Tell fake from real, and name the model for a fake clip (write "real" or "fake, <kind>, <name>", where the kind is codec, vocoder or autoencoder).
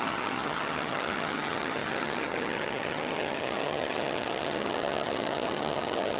fake, vocoder, HiFi-GAN